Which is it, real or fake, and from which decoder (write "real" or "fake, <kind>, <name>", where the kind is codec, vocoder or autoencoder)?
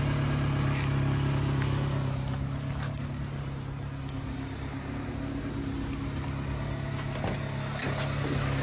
real